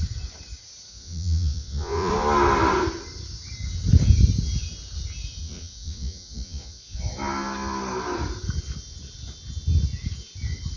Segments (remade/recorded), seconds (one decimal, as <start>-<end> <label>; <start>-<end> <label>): 0.0-0.9 recorded; 0.9-2.1 remade; 2.1-5.4 recorded; 5.4-7.0 remade; 7.0-10.8 recorded